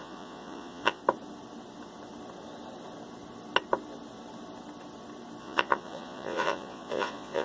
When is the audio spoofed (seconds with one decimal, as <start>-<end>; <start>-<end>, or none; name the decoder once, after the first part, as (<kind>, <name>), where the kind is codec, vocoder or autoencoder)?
0.0-1.0 (vocoder, Vocos); 5.4-7.4